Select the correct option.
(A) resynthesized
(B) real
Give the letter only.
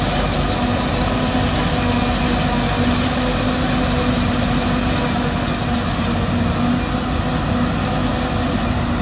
B